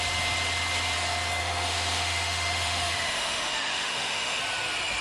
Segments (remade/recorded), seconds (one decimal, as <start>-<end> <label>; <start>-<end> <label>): 0.0-1.4 recorded; 1.4-4.4 remade; 4.4-5.0 recorded

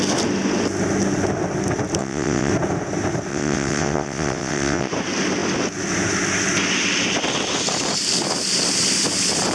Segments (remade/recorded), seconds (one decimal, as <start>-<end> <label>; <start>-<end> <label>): 0.0-2.0 recorded; 2.0-2.5 remade; 2.5-3.3 recorded; 3.3-4.9 remade; 4.9-9.5 recorded

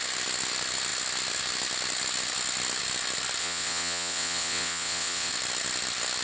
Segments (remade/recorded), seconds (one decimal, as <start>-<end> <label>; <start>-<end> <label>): 0.0-3.4 recorded; 3.4-5.3 remade; 5.3-6.2 recorded

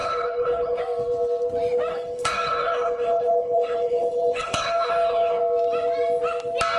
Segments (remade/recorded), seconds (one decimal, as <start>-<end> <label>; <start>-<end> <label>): 0.0-0.8 remade; 0.8-1.9 recorded; 1.9-5.4 remade; 5.4-6.8 recorded

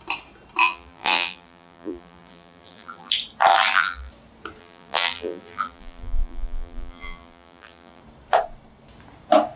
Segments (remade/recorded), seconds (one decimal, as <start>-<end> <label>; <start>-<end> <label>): 0.0-0.6 recorded; 0.6-3.1 remade; 3.1-3.5 recorded; 3.5-4.1 remade; 4.1-4.6 recorded; 4.6-8.0 remade; 8.0-9.6 recorded